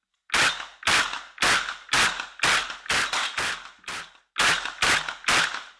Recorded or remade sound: recorded